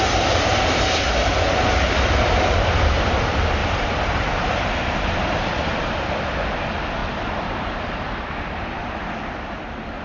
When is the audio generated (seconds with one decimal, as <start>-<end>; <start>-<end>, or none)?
0.5-1.3; 3.6-5.5; 7.0-8.9